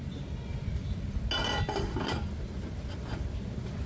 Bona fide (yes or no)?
yes